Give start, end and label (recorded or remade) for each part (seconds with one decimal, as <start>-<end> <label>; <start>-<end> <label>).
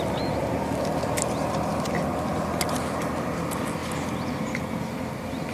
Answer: 0.0-5.5 recorded